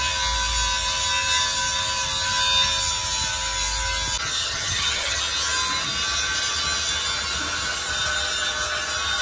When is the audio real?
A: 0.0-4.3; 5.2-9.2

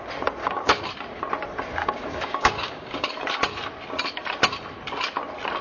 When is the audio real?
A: 0.0-0.4; 0.9-1.8; 3.1-5.6

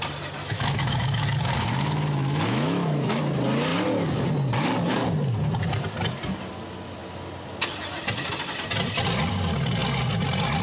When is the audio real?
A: 0.0-0.4; 3.2-10.6